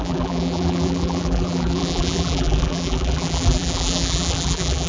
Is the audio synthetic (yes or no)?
yes